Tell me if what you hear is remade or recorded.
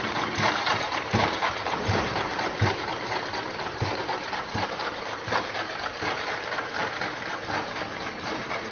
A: remade